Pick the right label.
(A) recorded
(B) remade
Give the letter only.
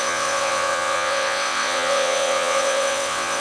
B